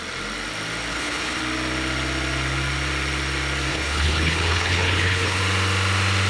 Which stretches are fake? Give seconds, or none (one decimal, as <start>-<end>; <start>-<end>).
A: 0.9-1.4; 3.7-5.4